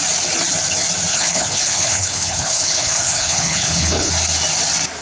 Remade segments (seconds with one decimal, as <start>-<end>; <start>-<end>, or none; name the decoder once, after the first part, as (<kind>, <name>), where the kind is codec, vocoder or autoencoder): 1.1-4.1 (codec, HILCodec)